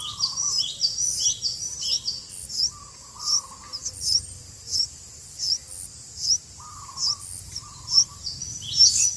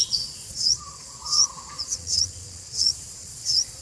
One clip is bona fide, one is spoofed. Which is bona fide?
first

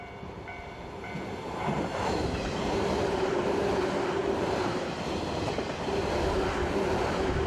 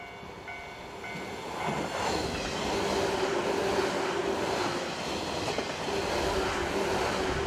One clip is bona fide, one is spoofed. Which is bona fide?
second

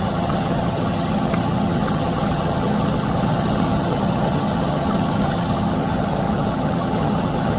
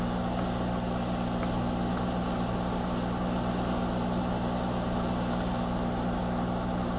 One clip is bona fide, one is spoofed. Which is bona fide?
second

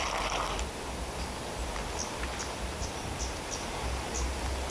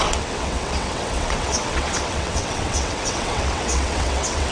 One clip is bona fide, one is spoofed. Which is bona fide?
first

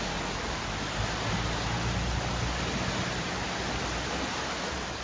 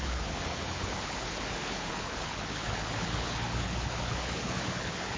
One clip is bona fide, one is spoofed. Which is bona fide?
first